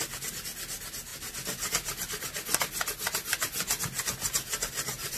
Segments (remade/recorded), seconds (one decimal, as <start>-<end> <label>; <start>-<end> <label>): 0.0-5.2 recorded